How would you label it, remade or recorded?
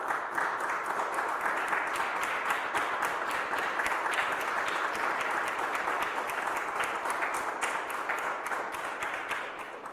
recorded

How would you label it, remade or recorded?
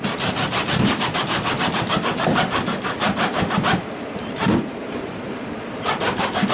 remade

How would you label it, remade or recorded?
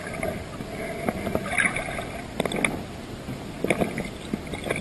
recorded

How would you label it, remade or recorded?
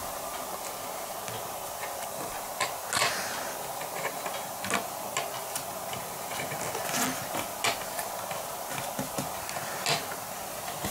recorded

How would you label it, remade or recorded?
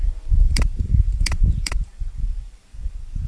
remade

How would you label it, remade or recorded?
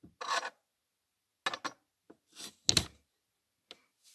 recorded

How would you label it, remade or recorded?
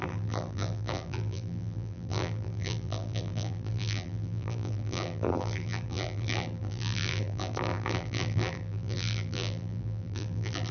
remade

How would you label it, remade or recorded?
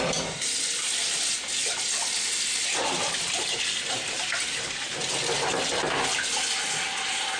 recorded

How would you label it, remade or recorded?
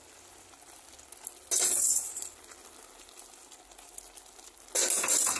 recorded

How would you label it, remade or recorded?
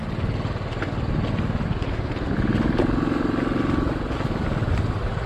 recorded